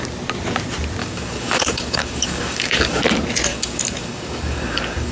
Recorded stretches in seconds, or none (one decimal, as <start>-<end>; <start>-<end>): 0.0-1.0; 3.0-3.5